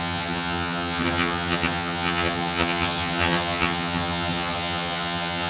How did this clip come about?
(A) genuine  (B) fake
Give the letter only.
B